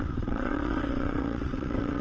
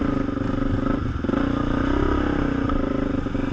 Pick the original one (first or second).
second